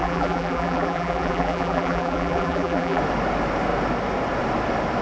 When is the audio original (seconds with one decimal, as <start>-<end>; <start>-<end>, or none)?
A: 3.0-5.0